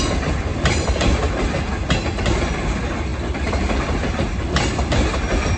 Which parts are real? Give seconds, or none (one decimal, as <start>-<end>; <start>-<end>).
0.0-0.5; 1.9-3.1; 4.0-5.6